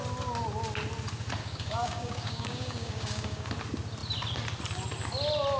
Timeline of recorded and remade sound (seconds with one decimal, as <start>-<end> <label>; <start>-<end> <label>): 0.0-1.4 recorded; 1.4-3.5 remade; 3.5-5.6 recorded